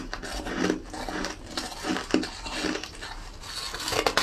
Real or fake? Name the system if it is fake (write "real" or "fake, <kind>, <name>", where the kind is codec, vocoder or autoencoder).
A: real